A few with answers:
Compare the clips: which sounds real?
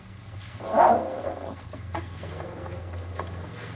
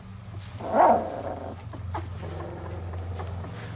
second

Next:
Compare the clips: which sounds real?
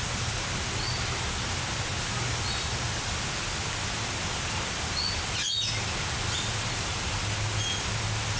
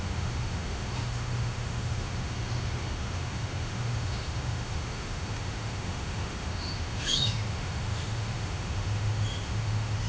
first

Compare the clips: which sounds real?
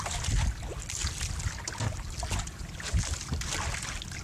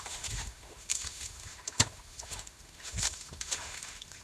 first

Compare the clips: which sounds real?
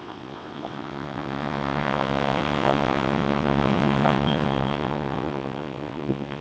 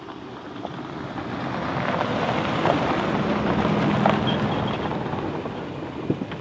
second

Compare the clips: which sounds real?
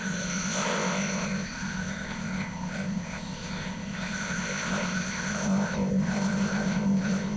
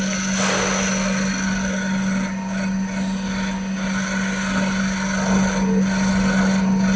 second